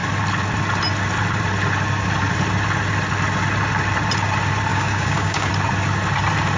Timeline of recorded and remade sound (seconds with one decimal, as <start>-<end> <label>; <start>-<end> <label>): 0.0-4.7 recorded; 4.7-5.5 remade; 5.5-6.6 recorded